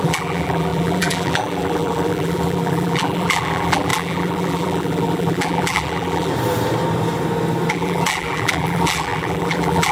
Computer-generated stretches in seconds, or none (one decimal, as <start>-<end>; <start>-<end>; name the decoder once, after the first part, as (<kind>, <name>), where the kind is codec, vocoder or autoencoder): 0.0-6.3 (vocoder, BigVGAN v2); 7.7-9.9